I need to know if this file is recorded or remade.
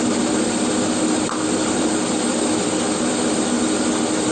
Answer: recorded